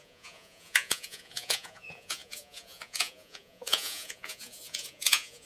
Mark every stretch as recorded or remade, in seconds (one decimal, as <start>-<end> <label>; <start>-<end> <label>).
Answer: 0.0-5.5 remade